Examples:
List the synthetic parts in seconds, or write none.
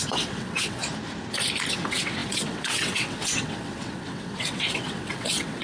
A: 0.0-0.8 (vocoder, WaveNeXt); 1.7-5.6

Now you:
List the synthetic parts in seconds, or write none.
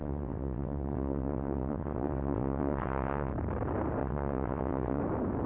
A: 0.0-3.3 (vocoder, WaveNeXt); 4.0-5.0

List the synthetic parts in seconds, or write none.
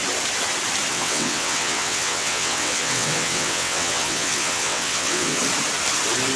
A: 0.9-5.4 (vocoder, WaveNeXt)